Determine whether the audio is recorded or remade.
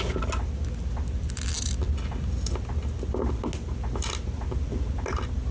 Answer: recorded